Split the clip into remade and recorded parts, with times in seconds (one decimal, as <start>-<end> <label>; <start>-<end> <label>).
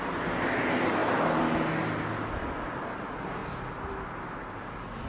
0.0-5.1 recorded